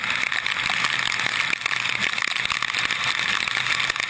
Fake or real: real